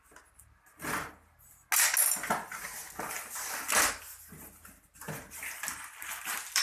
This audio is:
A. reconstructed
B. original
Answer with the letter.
B